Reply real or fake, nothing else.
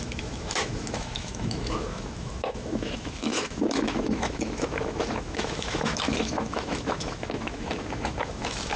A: fake